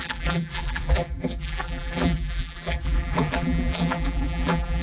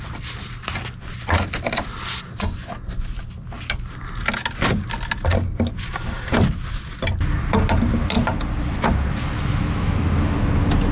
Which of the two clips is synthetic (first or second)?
first